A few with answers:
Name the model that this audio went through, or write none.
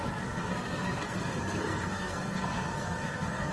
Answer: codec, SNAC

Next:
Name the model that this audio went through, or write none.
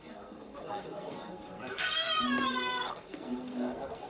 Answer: codec, SNAC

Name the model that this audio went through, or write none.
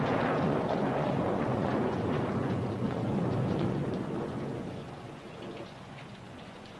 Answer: vocoder, Vocos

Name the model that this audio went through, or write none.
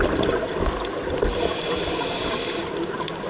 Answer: none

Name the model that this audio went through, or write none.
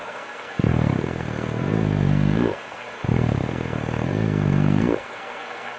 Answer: codec, SNAC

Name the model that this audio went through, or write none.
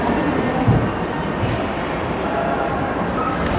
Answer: none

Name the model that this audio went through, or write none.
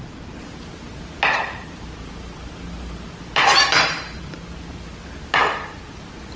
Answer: none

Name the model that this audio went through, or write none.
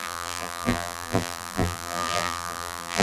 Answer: vocoder, BigVGAN v2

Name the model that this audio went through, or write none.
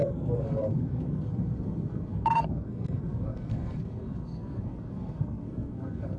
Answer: codec, SNAC